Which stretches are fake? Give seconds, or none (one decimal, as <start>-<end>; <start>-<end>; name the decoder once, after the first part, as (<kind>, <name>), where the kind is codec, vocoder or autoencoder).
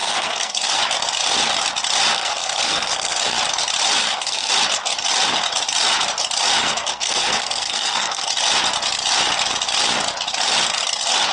0.0-0.8 (codec, SNAC); 2.1-3.4; 4.0-4.5; 6.6-8.3